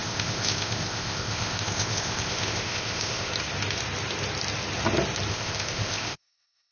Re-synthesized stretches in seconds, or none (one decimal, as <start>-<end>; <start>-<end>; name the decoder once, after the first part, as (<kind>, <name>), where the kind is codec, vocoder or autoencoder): 0.0-3.3 (codec, ZipCodec); 5.3-6.7

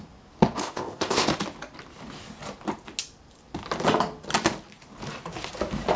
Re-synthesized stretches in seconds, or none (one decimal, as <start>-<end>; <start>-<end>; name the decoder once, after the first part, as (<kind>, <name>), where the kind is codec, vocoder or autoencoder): 0.6-1.3 (codec, ZipCodec)

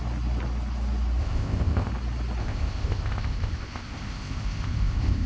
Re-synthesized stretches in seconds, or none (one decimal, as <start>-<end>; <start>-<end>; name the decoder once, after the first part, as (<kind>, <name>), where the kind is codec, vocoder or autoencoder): 1.2-1.9 (codec, ZipCodec); 2.4-5.3

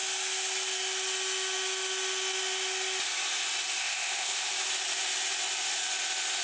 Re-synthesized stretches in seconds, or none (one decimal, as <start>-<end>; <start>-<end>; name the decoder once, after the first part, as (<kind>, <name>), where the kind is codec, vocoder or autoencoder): 3.8-4.5 (codec, ZipCodec)

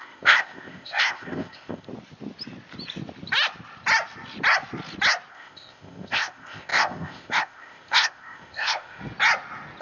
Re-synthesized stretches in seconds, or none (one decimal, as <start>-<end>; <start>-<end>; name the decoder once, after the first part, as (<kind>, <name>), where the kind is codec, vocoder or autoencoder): 0.0-1.9 (codec, ZipCodec); 5.3-9.0